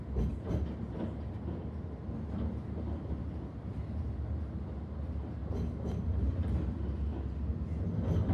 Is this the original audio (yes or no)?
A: yes